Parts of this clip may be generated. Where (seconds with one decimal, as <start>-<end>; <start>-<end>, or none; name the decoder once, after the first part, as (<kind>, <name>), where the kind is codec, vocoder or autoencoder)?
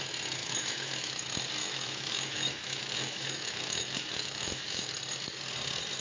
0.4-1.2 (autoencoder, DAC-VAE); 1.6-4.9